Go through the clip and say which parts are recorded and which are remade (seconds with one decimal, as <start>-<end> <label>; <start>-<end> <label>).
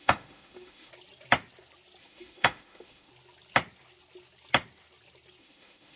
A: 0.0-0.9 remade; 0.9-2.0 recorded; 2.0-3.1 remade; 3.1-5.4 recorded; 5.4-6.0 remade